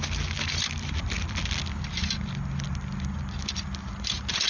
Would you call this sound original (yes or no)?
yes